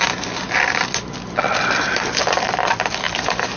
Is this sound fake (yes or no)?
no